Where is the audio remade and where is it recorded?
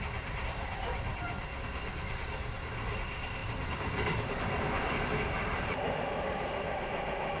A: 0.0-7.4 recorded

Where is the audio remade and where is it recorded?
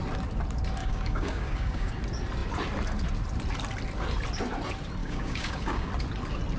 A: 0.0-0.8 recorded; 0.8-1.9 remade; 1.9-5.0 recorded; 5.0-5.9 remade; 5.9-6.6 recorded